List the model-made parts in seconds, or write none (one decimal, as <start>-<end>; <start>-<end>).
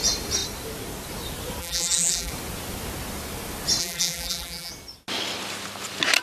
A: 1.6-2.3; 3.8-4.7